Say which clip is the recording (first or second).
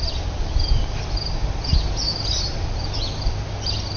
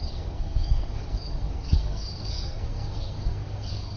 first